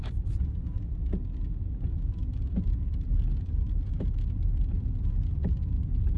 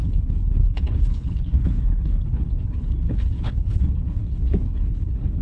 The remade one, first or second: second